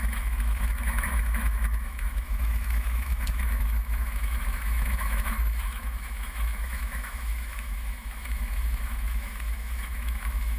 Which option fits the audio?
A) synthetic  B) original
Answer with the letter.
A